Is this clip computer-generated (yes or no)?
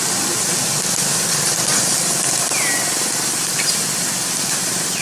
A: no